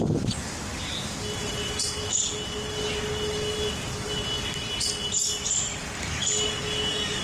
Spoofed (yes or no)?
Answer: no